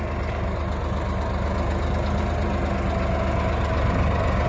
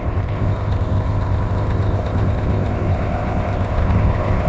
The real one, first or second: first